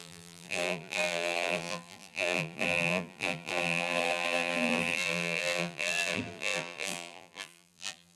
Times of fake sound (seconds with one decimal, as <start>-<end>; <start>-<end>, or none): 0.0-8.2